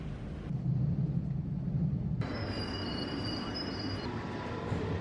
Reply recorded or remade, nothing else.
recorded